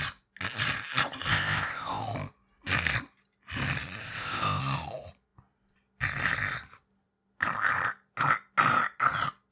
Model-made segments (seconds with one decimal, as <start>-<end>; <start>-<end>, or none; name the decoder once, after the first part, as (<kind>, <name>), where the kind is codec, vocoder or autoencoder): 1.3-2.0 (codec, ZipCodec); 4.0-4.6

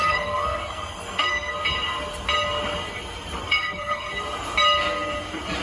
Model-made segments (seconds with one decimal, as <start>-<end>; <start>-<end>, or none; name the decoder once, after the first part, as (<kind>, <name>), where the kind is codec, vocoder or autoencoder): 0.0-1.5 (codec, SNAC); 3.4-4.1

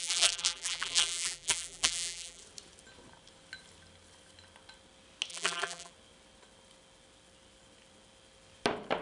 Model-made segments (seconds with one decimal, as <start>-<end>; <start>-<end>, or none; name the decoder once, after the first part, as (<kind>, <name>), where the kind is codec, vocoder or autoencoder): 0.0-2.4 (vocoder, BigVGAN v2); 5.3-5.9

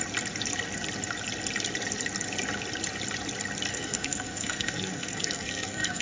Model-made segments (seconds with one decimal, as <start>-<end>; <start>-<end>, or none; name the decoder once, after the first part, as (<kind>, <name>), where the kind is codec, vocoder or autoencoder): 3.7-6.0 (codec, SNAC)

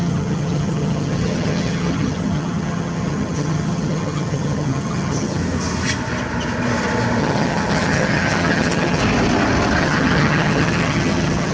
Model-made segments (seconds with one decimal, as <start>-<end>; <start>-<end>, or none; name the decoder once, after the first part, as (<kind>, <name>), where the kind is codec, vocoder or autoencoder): 0.0-5.4 (vocoder, HiFi-GAN); 7.2-9.0; 9.8-11.5

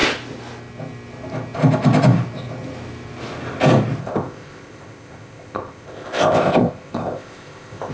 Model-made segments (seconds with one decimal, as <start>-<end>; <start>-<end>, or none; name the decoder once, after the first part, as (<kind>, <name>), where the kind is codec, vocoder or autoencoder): 4.0-7.9 (codec, ZipCodec)

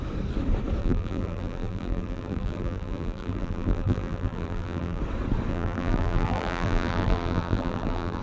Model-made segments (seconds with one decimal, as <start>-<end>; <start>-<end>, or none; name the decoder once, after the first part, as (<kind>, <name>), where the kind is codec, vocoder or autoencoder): 0.8-5.0 (vocoder, BigVGAN v2); 5.5-8.2

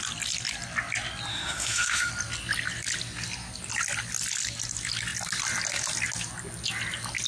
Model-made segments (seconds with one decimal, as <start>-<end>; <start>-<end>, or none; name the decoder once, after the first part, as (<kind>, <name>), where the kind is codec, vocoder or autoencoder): 1.3-2.1 (autoencoder, DAC-VAE)